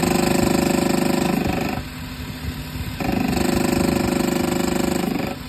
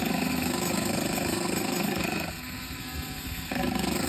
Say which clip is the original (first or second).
first